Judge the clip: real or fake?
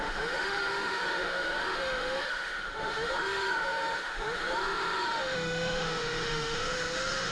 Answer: fake